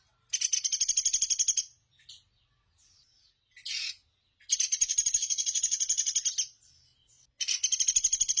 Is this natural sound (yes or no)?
yes